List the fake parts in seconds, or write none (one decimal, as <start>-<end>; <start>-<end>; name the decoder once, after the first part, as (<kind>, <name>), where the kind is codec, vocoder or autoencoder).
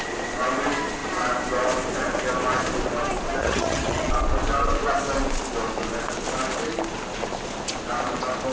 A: 3.4-4.1 (vocoder, HiFi-GAN)